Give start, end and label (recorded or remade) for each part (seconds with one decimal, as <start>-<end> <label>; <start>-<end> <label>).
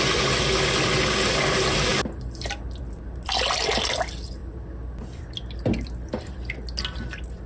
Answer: 0.0-7.5 recorded